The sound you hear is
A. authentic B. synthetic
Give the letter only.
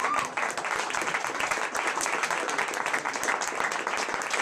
A